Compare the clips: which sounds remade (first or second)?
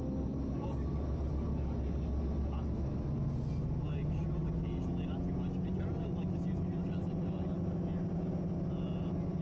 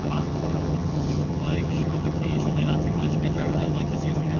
second